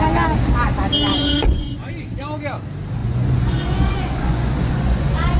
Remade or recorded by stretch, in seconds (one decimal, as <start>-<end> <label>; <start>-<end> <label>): 0.0-1.1 recorded; 1.1-1.9 remade; 1.9-3.0 recorded; 3.0-5.4 remade